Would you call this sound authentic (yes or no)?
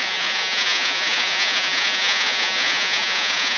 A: no